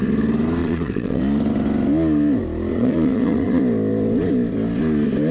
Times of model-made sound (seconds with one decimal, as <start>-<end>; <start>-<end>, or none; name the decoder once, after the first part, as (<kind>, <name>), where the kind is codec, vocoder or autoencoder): 0.6-1.2 (vocoder, Vocos); 2.7-3.6